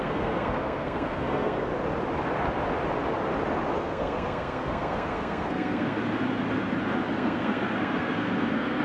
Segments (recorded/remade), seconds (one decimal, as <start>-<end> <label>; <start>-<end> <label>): 0.0-1.7 remade; 1.7-3.8 recorded; 3.8-6.0 remade; 6.0-7.1 recorded; 7.1-8.8 remade